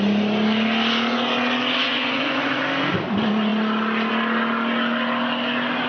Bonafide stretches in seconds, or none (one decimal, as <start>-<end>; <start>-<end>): 0.0-1.8; 2.6-5.9

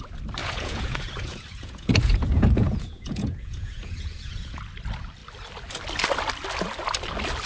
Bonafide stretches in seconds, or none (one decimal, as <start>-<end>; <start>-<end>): 0.0-0.4; 4.6-7.5

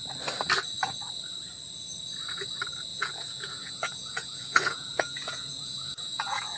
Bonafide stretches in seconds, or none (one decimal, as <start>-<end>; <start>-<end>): 0.0-2.9